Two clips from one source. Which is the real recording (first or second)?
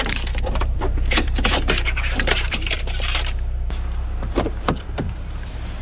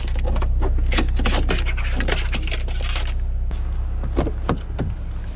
second